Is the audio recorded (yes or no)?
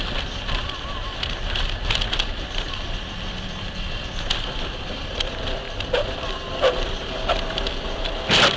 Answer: no